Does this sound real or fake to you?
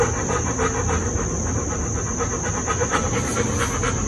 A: real